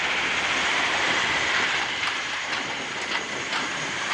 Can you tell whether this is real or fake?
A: fake